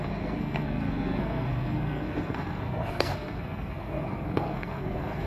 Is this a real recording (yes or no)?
no